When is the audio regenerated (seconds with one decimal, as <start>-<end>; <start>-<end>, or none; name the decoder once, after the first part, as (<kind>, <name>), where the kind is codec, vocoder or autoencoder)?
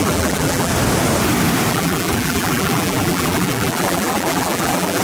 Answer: 0.0-0.7 (vocoder, BigVGAN v2); 1.7-5.0